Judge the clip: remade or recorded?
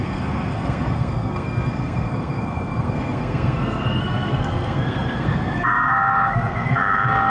remade